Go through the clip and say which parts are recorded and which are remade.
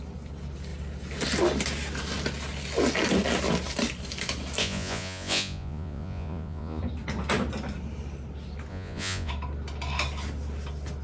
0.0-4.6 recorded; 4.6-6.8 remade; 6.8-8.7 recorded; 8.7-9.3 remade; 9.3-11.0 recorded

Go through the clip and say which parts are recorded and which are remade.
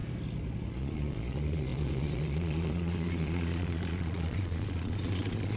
0.0-0.7 recorded; 0.7-5.6 remade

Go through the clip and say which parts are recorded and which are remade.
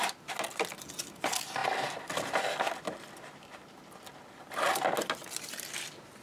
0.0-6.2 recorded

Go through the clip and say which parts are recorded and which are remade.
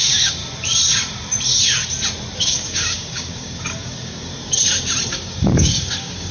0.0-0.4 remade; 0.4-2.4 recorded; 2.4-4.3 remade; 4.3-5.1 recorded; 5.1-6.3 remade